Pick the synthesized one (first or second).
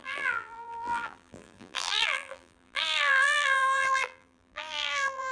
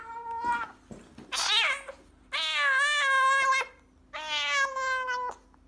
first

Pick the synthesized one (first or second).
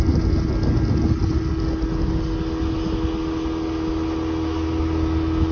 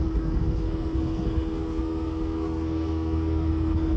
second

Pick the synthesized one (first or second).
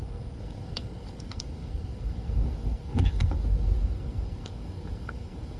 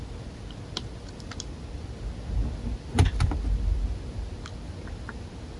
first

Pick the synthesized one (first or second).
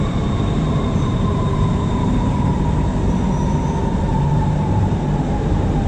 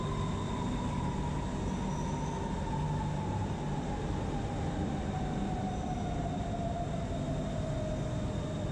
first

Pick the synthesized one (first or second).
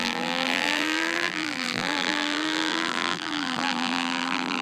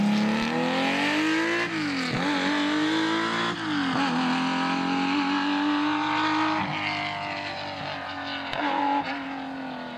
first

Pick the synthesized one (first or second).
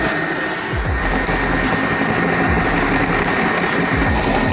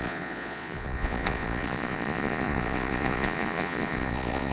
second